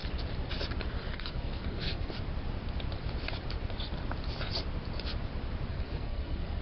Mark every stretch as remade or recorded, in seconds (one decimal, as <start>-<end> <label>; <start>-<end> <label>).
0.0-1.1 recorded; 1.1-2.1 remade; 2.1-5.7 recorded; 5.7-6.6 remade